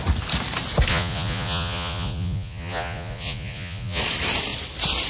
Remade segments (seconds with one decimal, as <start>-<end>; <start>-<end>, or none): 0.9-4.0